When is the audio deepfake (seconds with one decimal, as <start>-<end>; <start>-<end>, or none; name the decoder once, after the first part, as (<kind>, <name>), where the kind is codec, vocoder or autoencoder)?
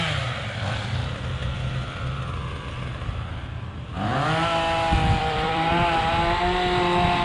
1.4-2.2 (vocoder, BigVGAN v2); 5.2-5.7